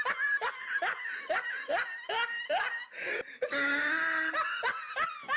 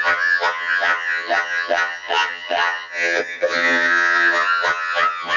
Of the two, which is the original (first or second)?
first